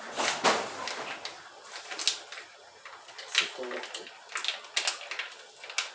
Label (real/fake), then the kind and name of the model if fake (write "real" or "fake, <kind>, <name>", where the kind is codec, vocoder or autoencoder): real